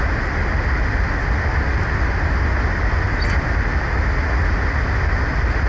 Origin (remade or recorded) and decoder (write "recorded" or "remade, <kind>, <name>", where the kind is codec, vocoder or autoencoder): recorded